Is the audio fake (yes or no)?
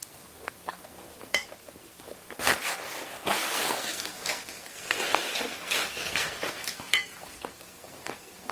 yes